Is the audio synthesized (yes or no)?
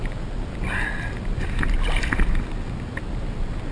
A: no